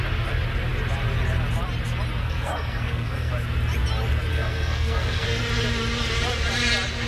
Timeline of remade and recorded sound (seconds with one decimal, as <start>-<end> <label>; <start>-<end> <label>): 0.0-2.2 recorded; 2.2-3.3 remade; 3.3-4.3 recorded; 4.3-5.4 remade; 5.4-7.1 recorded

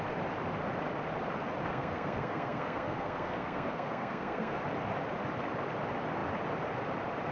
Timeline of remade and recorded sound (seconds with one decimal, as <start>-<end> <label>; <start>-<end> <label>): 0.0-1.7 recorded; 1.7-4.6 remade; 4.6-7.3 recorded

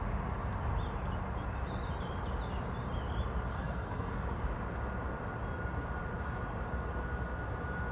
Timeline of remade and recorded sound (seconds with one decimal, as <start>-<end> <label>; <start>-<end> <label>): 0.0-3.5 recorded; 3.5-4.4 remade; 4.4-7.9 recorded

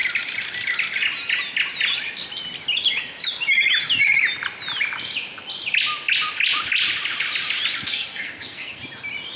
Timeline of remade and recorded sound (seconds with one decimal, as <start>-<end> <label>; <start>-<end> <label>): 0.0-7.9 recorded; 7.9-8.8 remade; 8.8-9.4 recorded